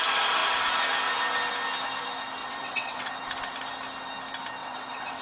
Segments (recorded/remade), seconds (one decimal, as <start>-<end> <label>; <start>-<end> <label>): 0.0-2.4 recorded; 2.4-3.1 remade; 3.1-4.6 recorded; 4.6-5.2 remade